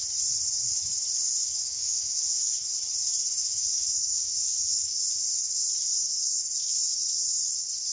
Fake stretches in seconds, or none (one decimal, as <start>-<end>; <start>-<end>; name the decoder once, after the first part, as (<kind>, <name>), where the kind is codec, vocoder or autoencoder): 1.4-2.5 (autoencoder, DAC-VAE); 3.4-5.0; 5.9-6.4